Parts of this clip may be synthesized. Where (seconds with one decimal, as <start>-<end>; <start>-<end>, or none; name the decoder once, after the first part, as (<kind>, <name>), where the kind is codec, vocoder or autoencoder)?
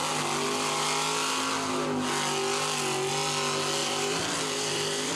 3.8-5.2 (vocoder, BigVGAN v2)